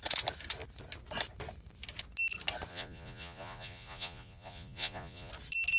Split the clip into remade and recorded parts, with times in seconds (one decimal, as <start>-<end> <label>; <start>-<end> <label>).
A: 0.0-2.7 recorded; 2.7-5.3 remade; 5.3-5.8 recorded